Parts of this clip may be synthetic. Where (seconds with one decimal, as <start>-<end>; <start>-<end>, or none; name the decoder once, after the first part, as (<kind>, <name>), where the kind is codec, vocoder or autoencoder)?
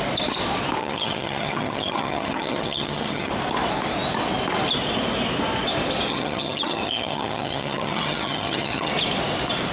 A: 0.8-3.3 (vocoder, HiFi-GAN); 6.1-8.9